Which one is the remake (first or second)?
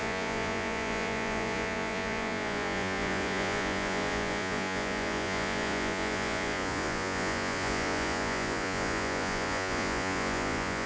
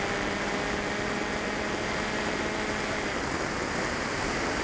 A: first